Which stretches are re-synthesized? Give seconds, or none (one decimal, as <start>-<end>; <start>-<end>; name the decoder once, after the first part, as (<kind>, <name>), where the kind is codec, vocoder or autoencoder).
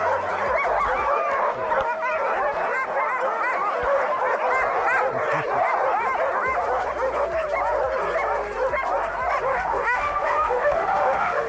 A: 9.5-11.5 (autoencoder, DAC-VAE)